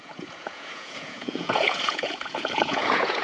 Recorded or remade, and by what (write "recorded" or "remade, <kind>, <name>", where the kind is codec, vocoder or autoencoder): remade, vocoder, Vocos